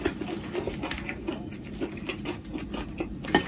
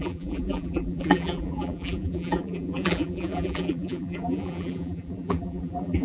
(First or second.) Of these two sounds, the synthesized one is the second